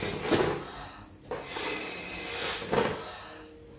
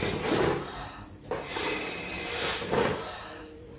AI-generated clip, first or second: second